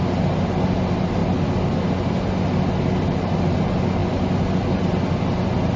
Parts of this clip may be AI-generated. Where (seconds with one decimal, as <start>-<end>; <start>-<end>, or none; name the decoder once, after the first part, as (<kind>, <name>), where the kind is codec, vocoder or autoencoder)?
none